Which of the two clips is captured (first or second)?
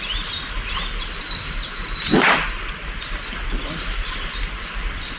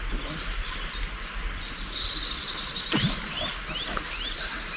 second